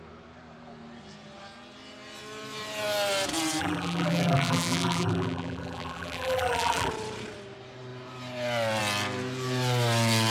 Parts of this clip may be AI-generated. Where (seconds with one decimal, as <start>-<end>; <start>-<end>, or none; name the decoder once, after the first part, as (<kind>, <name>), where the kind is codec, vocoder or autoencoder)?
3.6-6.9 (vocoder, BigVGAN v2)